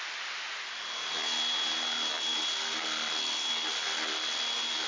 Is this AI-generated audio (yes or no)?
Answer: no